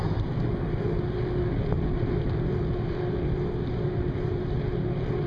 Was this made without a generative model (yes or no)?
yes